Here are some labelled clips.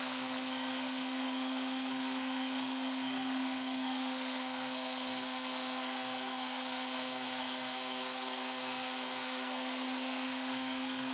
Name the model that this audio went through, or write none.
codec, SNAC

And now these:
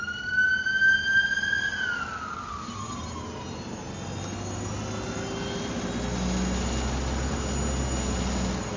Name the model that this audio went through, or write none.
none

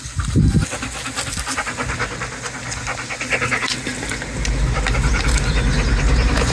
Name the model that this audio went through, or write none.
none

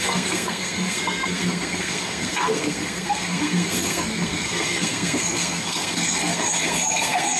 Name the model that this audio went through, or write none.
codec, SNAC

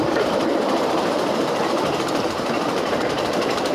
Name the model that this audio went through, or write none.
vocoder, BigVGAN v2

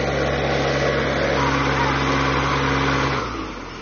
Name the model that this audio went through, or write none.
none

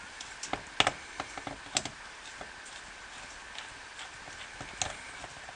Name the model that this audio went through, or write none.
none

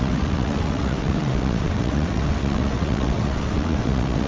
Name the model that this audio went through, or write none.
vocoder, WaveNeXt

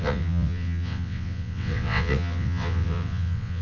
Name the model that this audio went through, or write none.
vocoder, WaveNeXt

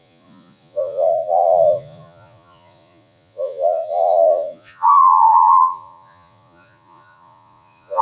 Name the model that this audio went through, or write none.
vocoder, Vocos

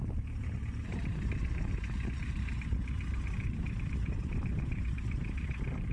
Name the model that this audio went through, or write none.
vocoder, BigVGAN v2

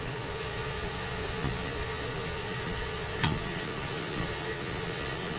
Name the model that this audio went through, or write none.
vocoder, Vocos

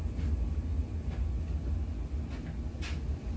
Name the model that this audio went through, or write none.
none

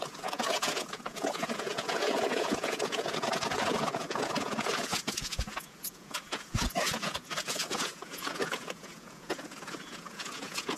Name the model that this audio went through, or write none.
vocoder, Vocos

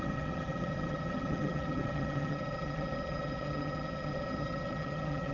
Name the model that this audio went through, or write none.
vocoder, HiFi-GAN